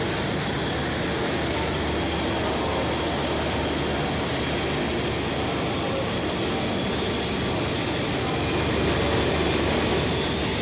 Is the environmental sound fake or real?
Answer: real